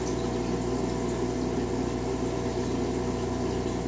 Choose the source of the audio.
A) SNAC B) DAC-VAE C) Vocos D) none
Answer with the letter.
D